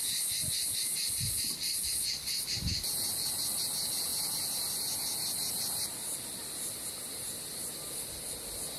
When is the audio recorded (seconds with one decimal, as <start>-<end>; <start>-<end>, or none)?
4.1-8.8